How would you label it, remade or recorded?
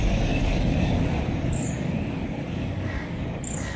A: remade